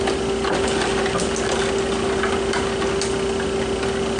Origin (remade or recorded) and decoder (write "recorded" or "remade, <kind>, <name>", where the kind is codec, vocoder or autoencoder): recorded